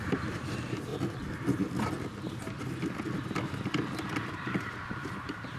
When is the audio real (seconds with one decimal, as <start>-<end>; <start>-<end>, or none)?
0.9-4.3